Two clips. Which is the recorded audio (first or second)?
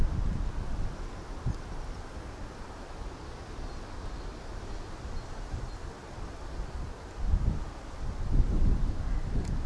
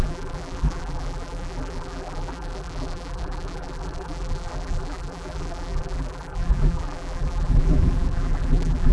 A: first